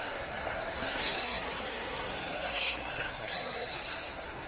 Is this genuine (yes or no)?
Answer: no